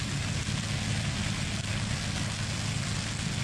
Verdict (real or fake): real